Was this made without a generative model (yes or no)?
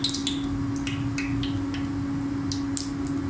yes